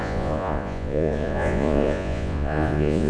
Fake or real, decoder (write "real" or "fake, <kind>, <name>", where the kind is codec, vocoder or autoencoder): fake, vocoder, Vocos